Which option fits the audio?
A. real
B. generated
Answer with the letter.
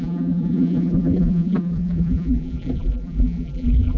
B